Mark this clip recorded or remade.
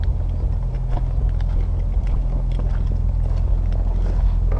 recorded